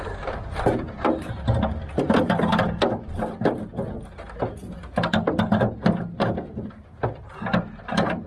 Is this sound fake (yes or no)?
no